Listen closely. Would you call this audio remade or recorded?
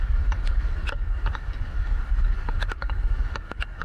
remade